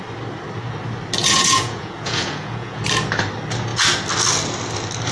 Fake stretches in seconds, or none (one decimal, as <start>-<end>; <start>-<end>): 1.2-2.8

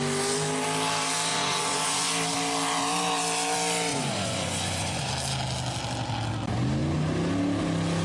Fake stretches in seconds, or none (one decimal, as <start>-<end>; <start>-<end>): 1.3-2.1; 3.9-5.1

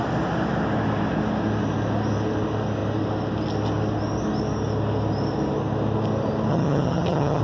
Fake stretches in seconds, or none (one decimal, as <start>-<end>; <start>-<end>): 6.5-7.4

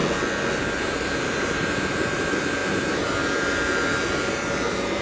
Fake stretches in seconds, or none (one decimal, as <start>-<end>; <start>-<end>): 0.8-5.0

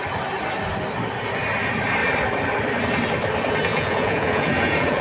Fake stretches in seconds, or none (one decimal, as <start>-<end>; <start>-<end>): 3.7-5.0

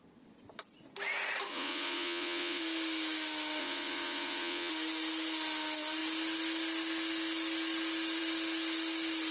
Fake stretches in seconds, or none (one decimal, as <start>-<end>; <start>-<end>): 1.5-2.6; 3.6-4.7

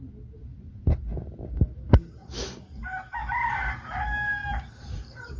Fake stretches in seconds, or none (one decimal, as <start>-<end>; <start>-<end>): 1.1-2.8; 3.2-3.7; 4.4-5.4